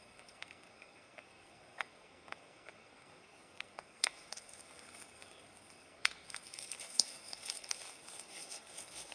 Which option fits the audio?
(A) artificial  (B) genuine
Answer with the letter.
A